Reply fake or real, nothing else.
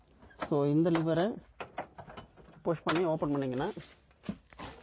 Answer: real